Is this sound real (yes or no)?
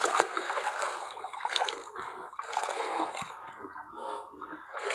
no